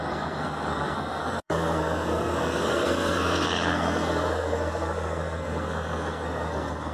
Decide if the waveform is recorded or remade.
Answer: remade